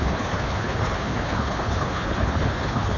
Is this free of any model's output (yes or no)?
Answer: no